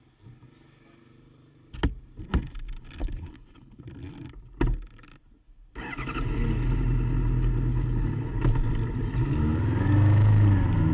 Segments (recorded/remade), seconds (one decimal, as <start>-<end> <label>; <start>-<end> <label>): 0.0-3.0 recorded; 3.0-3.8 remade; 3.8-7.7 recorded; 7.7-8.3 remade; 8.3-10.9 recorded

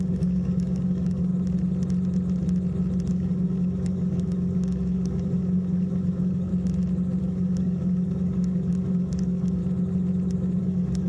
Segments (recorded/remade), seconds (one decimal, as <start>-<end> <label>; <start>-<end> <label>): 0.0-1.3 remade; 1.3-3.1 recorded; 3.1-6.5 remade; 6.5-7.2 recorded; 7.2-9.6 remade; 9.6-10.6 recorded; 10.6-11.1 remade

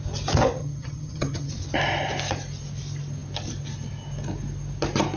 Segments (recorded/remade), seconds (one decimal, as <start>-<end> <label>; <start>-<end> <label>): 0.0-0.6 recorded; 0.6-1.5 remade; 1.5-5.2 recorded

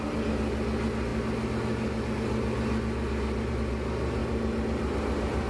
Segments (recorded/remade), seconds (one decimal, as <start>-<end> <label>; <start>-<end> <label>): 0.0-5.5 recorded

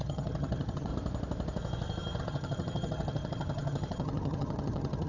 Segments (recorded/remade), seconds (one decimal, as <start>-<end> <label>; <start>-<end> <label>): 0.0-0.9 remade; 0.9-2.2 recorded; 2.2-5.1 remade